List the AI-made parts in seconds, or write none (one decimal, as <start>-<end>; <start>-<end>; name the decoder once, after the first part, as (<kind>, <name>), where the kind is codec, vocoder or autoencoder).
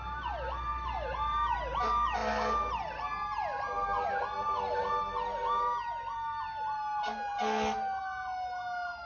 none